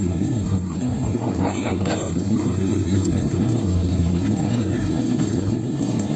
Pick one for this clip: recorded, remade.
remade